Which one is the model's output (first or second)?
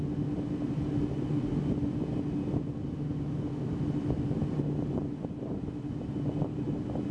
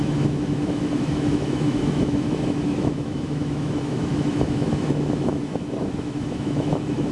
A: second